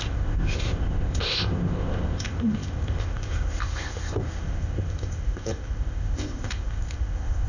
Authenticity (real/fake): fake